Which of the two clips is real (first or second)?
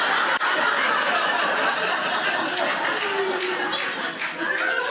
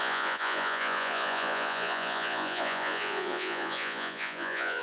first